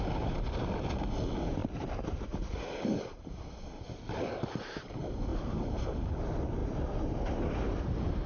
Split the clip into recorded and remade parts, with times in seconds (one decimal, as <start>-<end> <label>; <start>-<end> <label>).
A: 0.0-1.6 recorded; 1.6-3.3 remade; 3.3-5.3 recorded; 5.3-6.1 remade; 6.1-6.6 recorded; 6.6-8.3 remade